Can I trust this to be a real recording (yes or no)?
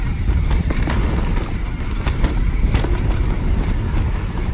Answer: yes